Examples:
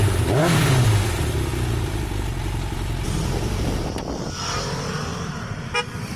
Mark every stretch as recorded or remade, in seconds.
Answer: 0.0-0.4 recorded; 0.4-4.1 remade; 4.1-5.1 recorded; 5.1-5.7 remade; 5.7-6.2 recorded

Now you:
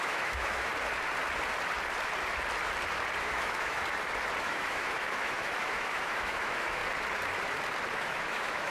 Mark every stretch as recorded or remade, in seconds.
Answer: 0.0-0.7 remade; 0.7-3.2 recorded; 3.2-3.8 remade; 3.8-4.4 recorded; 4.4-6.8 remade; 6.8-7.9 recorded; 7.9-8.7 remade

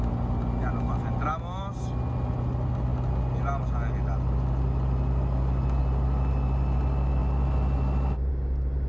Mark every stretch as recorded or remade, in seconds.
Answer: 0.0-8.9 recorded

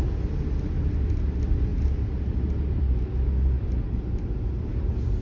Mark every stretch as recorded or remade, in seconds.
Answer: 0.0-5.2 recorded

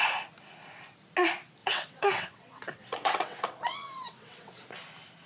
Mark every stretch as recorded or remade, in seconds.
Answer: 0.0-1.6 recorded; 1.6-4.6 remade; 4.6-5.3 recorded